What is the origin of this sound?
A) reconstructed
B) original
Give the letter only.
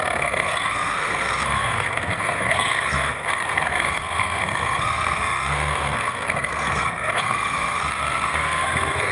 A